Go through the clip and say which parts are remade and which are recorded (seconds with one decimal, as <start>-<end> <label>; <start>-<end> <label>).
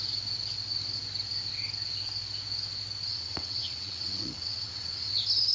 0.0-3.1 recorded; 3.1-5.1 remade; 5.1-5.5 recorded